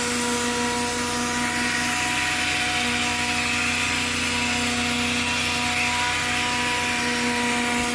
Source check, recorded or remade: recorded